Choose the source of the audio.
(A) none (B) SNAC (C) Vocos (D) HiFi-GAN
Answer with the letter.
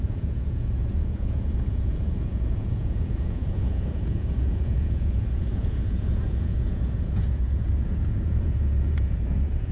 C